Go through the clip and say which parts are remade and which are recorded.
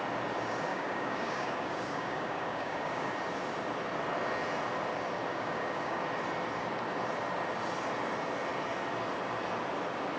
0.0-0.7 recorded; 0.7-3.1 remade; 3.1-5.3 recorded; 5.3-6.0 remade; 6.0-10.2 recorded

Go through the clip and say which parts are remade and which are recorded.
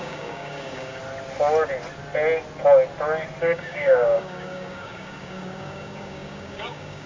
0.0-1.0 remade; 1.0-3.4 recorded; 3.4-7.1 remade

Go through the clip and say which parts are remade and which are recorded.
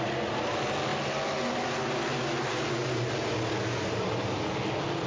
0.0-5.1 recorded